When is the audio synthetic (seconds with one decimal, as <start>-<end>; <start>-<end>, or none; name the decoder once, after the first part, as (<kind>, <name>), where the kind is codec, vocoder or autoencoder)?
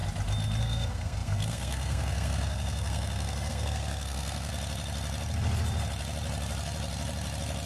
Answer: 0.6-4.5 (codec, SNAC)